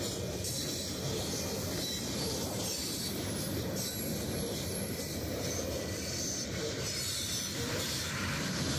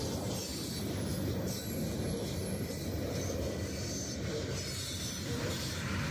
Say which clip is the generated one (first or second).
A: first